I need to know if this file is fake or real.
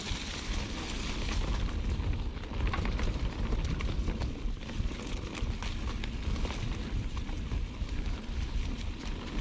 real